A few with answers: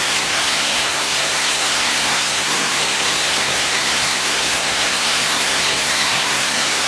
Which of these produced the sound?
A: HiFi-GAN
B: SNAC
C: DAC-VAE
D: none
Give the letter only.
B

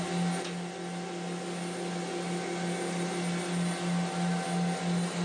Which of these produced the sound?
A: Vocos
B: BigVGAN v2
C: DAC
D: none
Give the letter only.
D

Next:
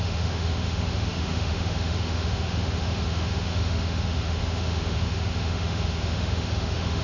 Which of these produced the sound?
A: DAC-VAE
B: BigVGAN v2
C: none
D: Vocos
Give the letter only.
A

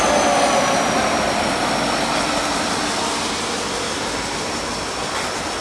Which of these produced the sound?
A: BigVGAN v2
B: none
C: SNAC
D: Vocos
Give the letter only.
B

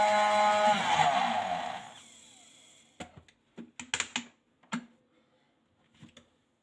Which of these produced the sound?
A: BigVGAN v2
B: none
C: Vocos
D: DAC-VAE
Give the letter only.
B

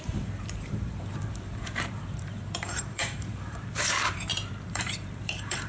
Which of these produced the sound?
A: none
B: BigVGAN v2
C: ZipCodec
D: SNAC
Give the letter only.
B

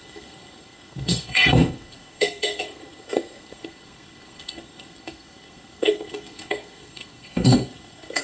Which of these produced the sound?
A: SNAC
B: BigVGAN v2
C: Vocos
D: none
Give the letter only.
A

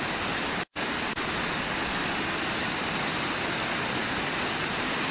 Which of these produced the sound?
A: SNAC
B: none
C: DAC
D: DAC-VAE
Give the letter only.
B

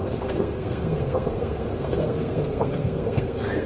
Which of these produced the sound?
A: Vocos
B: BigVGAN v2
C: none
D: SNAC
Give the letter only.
D